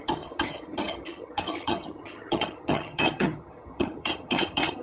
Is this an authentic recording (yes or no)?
no